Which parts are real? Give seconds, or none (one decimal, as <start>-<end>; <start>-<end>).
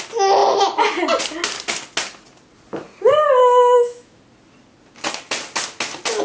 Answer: 0.0-3.4; 4.2-6.2